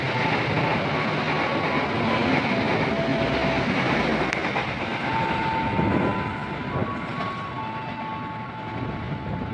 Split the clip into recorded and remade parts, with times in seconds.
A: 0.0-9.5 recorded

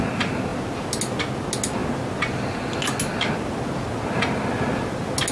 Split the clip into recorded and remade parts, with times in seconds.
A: 0.0-5.3 recorded

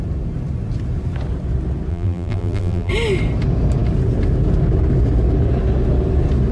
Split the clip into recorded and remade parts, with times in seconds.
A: 0.0-1.9 recorded; 1.9-2.9 remade; 2.9-6.5 recorded

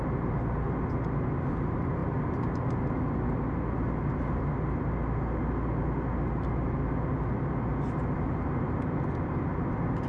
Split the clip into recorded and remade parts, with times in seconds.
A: 0.0-10.1 recorded

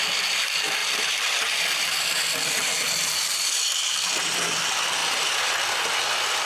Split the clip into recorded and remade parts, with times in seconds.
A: 0.0-0.8 recorded; 0.8-4.6 remade; 4.6-5.0 recorded; 5.0-5.6 remade; 5.6-6.5 recorded

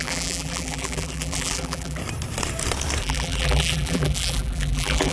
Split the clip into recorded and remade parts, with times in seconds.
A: 0.0-2.0 remade; 2.0-3.0 recorded; 3.0-5.1 remade

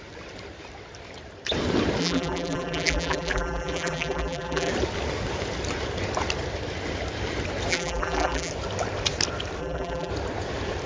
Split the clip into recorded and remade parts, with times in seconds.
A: 0.0-2.0 recorded; 2.0-4.7 remade; 4.7-7.7 recorded; 7.7-8.5 remade; 8.5-9.6 recorded; 9.6-10.1 remade; 10.1-10.9 recorded